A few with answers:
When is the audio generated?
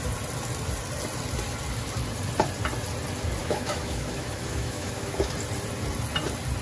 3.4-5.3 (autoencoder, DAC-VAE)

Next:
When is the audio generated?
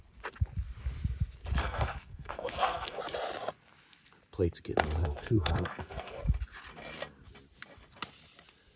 1.6-3.0 (codec, SNAC); 5.0-6.2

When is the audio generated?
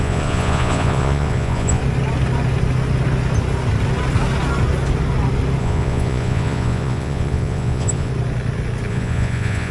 0.0-1.8 (vocoder, Vocos); 5.6-8.1; 8.9-9.7